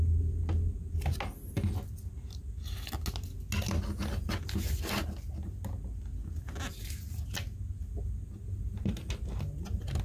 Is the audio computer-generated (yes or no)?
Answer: no